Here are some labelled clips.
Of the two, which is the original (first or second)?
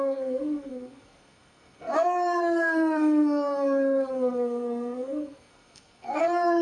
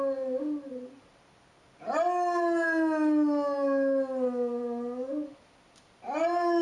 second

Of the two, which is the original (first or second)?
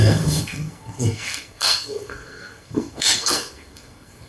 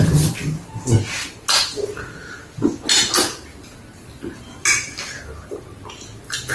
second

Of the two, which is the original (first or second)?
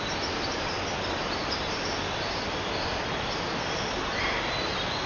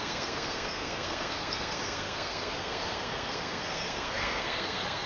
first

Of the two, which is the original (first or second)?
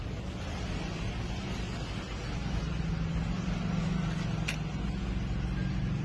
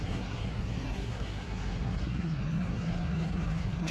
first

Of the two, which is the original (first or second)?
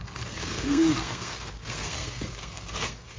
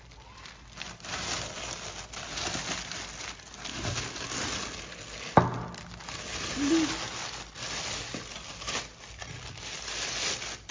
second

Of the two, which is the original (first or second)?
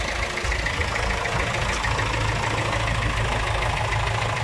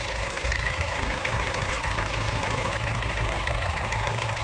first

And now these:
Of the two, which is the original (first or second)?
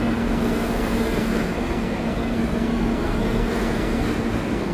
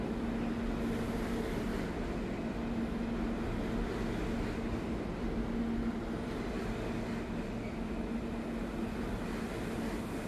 second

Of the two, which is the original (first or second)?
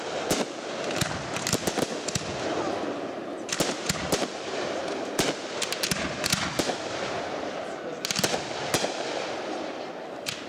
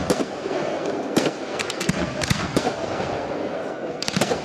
first